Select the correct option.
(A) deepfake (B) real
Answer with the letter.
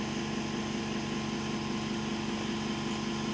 B